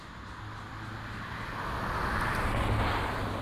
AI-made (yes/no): no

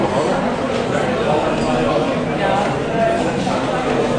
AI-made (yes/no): no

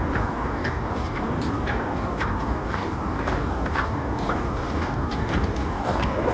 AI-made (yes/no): yes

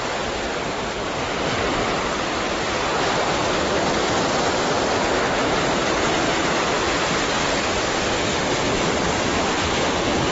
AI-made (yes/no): no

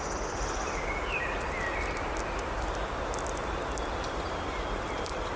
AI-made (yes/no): no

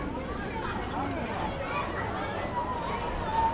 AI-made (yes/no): no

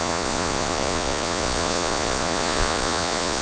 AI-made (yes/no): yes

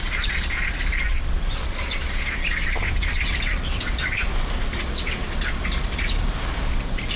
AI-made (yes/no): no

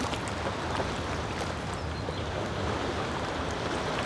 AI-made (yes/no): no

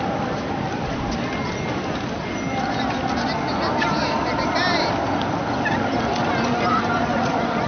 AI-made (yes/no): no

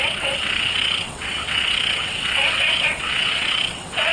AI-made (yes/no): yes